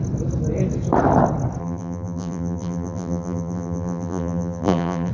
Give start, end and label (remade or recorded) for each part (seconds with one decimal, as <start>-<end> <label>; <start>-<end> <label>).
0.0-1.6 recorded; 1.6-5.1 remade